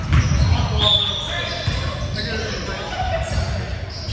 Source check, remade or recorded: recorded